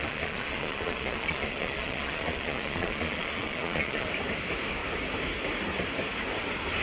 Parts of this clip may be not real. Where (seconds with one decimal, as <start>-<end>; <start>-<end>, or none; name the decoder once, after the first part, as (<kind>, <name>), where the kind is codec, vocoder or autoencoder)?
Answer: 0.0-4.1 (vocoder, Vocos)